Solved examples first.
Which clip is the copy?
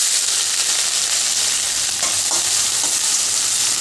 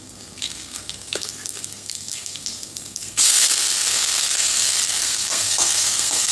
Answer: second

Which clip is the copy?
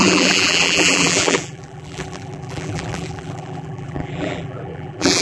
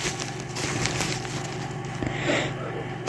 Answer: first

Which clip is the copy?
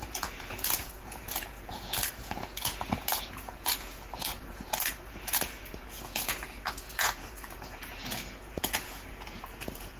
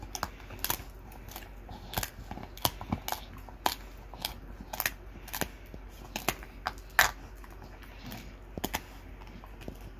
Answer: first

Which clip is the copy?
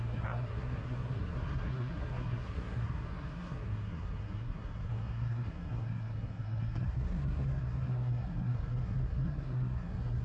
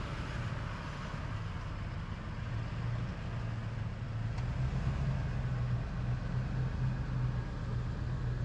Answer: first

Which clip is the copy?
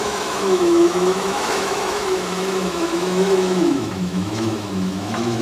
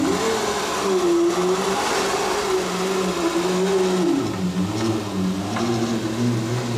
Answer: first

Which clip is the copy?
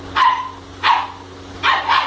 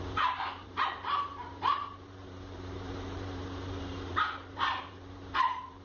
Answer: second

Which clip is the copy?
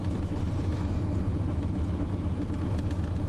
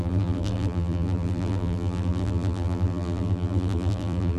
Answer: second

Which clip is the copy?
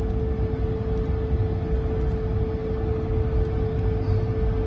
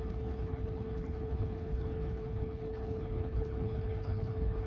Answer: second